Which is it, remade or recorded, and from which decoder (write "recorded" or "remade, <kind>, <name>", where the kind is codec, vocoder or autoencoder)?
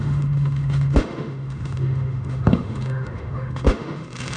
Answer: remade, autoencoder, DAC-VAE